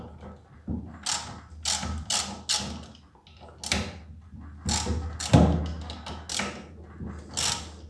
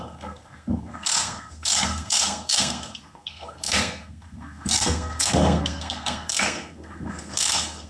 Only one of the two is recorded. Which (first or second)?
first